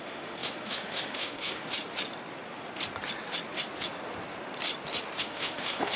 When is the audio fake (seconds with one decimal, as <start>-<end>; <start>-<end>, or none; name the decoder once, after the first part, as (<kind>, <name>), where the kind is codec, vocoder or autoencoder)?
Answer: 0.0-1.6 (autoencoder, DAC-VAE); 5.2-6.0